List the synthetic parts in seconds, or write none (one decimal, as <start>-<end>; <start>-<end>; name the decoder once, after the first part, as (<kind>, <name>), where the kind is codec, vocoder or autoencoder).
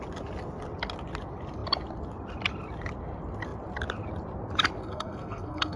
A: 4.8-5.8 (codec, SNAC)